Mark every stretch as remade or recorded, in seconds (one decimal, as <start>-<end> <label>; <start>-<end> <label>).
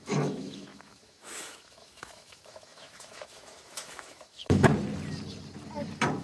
0.0-4.7 remade; 4.7-6.2 recorded